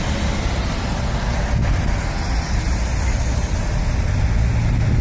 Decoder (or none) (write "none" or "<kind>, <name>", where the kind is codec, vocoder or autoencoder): none